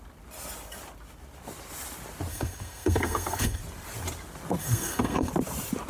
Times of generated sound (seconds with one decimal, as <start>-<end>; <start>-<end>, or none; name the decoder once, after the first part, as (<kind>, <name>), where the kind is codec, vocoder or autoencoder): 2.3-3.6 (codec, SNAC); 4.6-5.3